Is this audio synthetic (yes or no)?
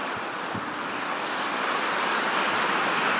no